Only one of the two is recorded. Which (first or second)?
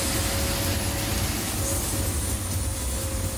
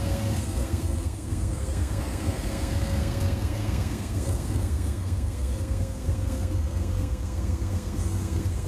first